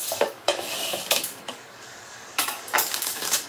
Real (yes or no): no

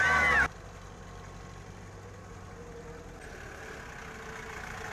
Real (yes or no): yes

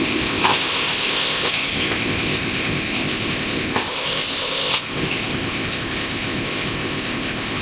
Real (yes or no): no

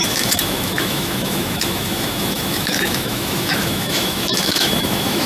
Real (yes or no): no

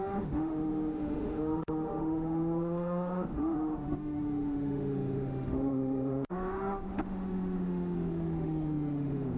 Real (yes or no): no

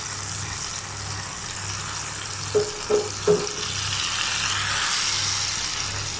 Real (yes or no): yes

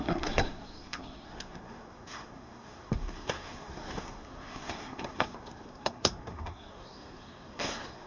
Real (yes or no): no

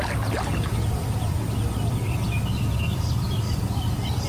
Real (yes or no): yes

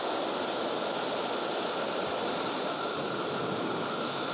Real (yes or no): yes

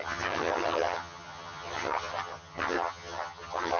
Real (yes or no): no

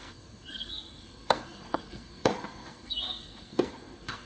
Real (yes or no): no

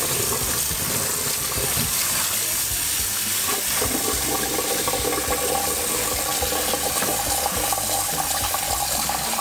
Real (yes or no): yes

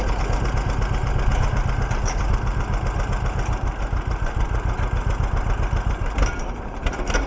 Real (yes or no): yes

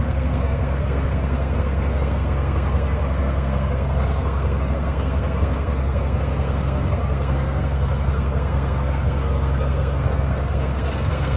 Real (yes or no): no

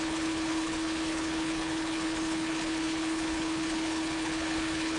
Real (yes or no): no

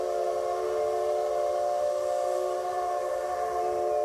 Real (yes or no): yes